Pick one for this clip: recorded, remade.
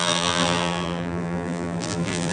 remade